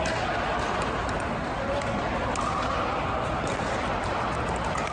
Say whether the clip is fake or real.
real